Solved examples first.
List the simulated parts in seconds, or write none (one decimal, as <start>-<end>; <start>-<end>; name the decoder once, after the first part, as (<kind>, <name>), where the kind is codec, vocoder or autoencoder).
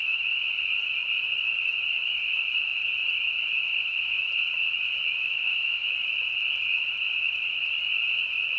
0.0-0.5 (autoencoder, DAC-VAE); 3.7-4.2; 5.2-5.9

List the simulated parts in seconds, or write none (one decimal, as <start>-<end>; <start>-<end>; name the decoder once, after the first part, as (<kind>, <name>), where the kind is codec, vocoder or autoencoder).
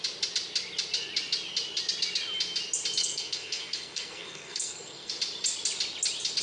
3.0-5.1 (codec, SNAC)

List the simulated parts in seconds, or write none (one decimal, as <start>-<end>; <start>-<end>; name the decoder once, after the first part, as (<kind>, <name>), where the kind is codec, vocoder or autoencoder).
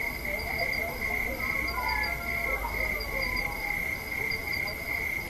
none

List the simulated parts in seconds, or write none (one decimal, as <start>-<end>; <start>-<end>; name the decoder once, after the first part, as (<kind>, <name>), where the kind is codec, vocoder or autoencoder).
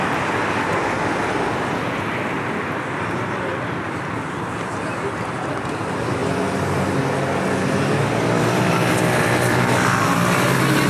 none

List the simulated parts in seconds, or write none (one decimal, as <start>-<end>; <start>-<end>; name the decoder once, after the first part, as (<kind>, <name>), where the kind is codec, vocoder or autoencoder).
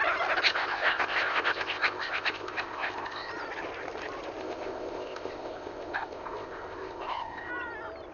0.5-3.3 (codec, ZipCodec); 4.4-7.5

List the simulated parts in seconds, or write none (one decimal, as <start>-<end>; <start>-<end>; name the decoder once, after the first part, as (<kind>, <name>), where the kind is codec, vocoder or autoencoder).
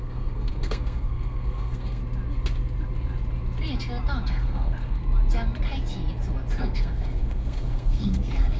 0.0-2.0 (codec, SNAC); 4.3-5.0; 6.6-8.6